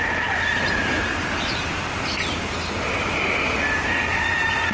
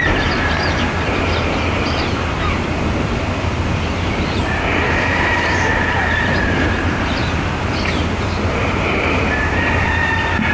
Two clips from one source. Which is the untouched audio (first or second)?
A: first